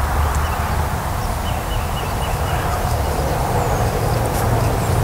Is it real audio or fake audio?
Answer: real